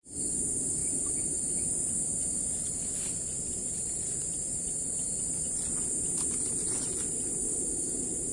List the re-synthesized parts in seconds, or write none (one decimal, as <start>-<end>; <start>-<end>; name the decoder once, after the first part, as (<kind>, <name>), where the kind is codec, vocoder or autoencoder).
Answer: 3.6-5.5 (vocoder, BigVGAN v2)